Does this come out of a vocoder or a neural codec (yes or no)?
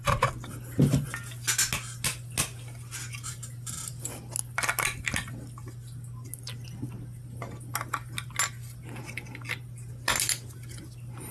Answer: no